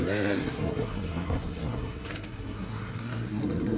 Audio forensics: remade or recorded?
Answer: remade